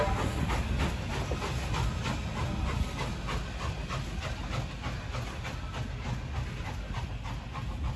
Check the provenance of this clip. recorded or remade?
recorded